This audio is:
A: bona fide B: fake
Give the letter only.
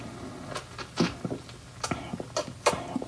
A